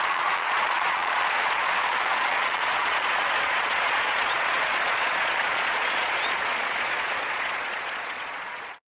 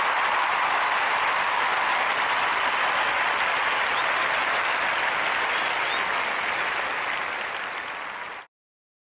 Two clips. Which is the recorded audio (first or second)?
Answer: second